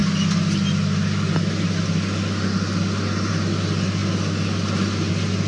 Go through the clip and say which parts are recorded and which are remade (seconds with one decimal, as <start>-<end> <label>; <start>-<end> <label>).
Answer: 0.0-5.5 recorded